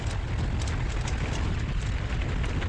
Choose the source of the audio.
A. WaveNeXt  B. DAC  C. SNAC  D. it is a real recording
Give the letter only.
D